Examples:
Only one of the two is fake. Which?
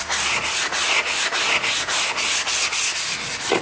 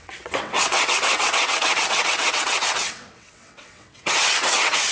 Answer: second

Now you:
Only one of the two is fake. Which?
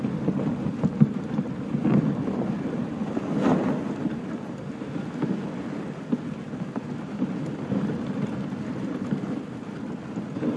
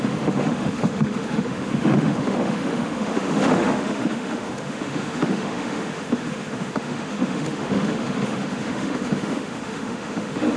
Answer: second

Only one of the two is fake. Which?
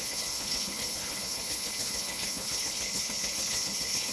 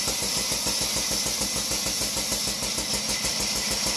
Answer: first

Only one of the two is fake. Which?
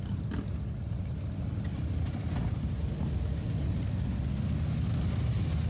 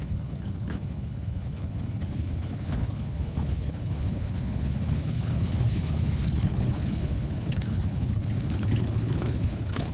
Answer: second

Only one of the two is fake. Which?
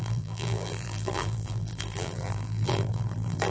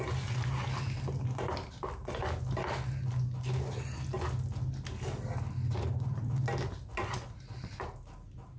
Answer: first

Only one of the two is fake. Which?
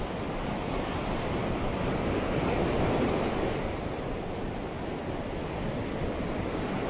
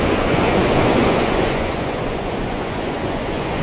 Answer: second